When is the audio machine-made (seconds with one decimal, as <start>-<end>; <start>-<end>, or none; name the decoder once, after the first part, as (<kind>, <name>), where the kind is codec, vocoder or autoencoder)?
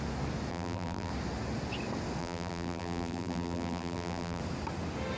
0.5-1.1 (vocoder, BigVGAN v2); 2.2-4.4